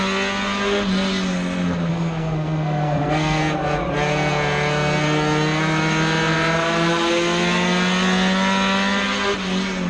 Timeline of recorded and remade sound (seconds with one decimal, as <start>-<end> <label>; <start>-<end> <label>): 0.0-1.9 recorded; 1.9-3.4 remade; 3.4-9.9 recorded